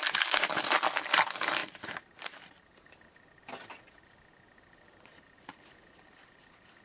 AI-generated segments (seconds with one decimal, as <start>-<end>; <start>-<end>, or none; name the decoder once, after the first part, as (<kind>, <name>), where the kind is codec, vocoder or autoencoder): none